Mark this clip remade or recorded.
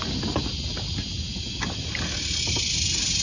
recorded